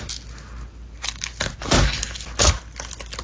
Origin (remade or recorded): recorded